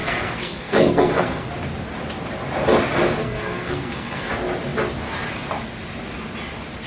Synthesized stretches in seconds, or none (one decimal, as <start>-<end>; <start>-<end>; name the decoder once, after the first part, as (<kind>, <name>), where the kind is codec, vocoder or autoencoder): 0.0-1.5 (codec, SNAC); 3.2-4.3